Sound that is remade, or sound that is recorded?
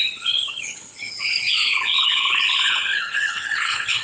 remade